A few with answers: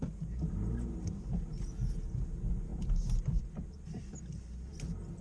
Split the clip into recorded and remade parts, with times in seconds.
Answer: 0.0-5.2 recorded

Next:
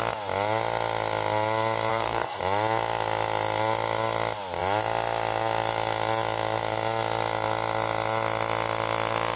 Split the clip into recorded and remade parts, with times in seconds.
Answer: 0.0-1.9 recorded; 1.9-2.4 remade; 2.4-9.4 recorded

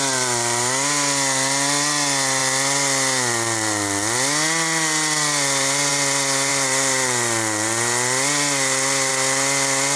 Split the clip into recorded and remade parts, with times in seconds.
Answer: 0.0-10.0 recorded

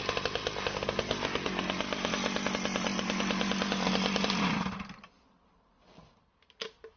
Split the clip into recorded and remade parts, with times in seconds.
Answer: 0.0-7.0 recorded